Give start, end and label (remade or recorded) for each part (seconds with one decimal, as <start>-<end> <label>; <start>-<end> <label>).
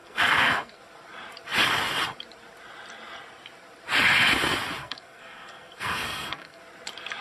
0.0-0.8 remade; 0.8-4.8 recorded; 4.8-6.6 remade; 6.6-7.2 recorded